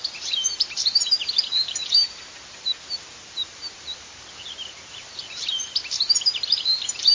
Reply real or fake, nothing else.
fake